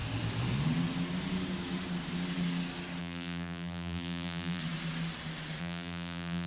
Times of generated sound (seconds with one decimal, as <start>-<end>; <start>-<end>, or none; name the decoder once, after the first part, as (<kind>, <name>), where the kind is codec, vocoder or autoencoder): 3.0-4.6 (vocoder, BigVGAN v2); 5.6-6.5